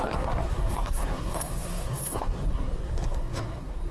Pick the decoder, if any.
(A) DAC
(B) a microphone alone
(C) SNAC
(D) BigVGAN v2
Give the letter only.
C